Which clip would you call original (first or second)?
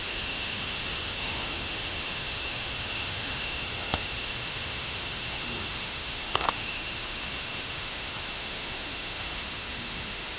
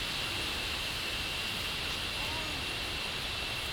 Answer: second